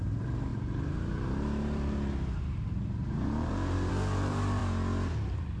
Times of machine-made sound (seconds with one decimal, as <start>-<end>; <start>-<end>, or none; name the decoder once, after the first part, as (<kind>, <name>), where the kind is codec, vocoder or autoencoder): 0.0-4.6 (vocoder, BigVGAN v2)